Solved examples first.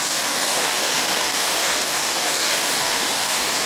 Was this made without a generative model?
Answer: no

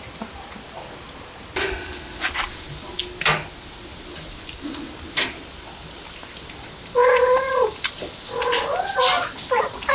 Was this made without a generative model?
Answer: yes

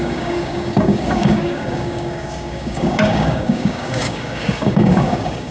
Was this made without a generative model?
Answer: no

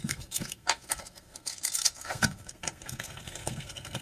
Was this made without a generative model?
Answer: no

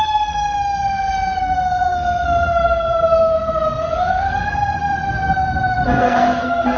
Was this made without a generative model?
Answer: no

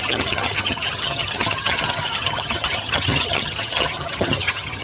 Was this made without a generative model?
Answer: no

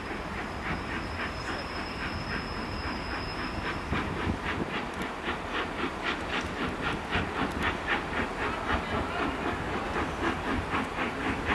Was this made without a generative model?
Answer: yes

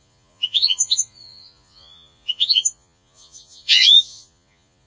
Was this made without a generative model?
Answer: no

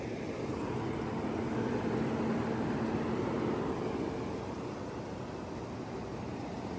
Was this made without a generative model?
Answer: yes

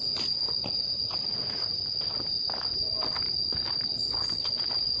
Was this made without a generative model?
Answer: yes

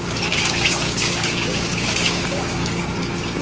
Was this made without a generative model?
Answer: no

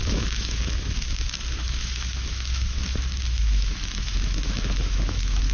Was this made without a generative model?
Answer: no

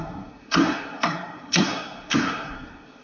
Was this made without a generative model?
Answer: no